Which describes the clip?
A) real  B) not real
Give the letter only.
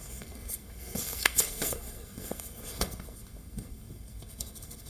B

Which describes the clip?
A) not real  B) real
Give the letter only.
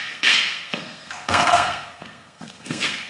A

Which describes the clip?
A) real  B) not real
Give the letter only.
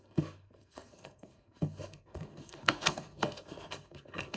B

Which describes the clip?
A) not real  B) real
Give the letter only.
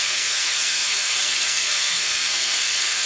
A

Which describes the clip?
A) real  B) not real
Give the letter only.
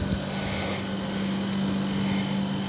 A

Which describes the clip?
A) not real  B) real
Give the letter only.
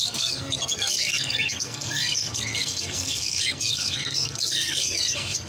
A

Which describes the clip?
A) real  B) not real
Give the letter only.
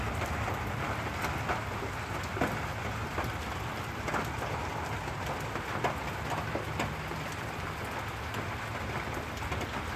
A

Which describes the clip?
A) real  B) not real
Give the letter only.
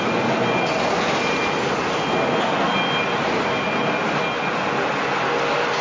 A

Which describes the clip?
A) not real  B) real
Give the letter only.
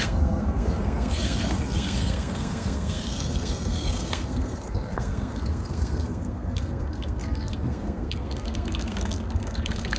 A